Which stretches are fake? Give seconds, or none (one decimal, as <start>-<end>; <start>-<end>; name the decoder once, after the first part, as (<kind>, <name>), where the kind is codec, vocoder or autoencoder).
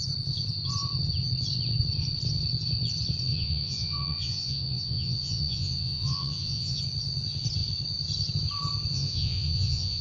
3.3-6.8 (vocoder, Vocos); 8.9-10.0